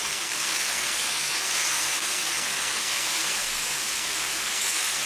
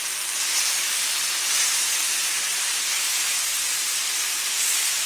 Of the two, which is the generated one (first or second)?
first